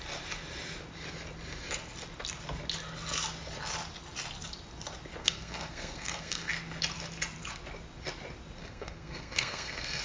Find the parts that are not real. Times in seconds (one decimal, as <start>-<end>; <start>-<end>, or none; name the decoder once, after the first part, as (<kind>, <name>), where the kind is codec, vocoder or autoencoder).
5.2-6.5 (codec, SNAC); 8.6-10.0